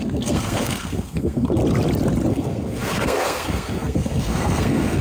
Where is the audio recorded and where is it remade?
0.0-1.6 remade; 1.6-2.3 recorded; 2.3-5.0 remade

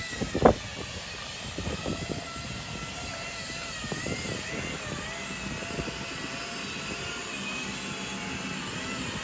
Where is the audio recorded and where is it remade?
0.0-9.2 recorded

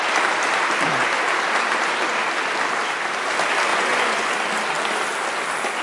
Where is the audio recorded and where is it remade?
0.0-3.7 recorded; 3.7-4.3 remade; 4.3-5.8 recorded

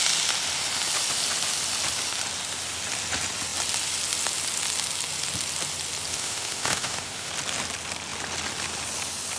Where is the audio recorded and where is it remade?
0.0-6.1 recorded; 6.1-7.3 remade; 7.3-9.4 recorded